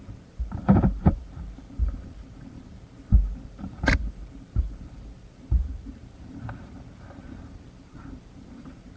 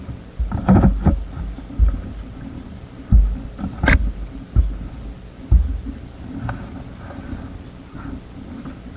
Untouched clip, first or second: second